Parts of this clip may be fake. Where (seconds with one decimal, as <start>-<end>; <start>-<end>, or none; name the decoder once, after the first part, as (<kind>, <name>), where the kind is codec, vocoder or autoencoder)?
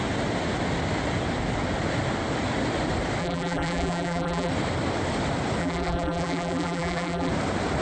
3.2-4.5 (vocoder, BigVGAN v2); 5.6-7.3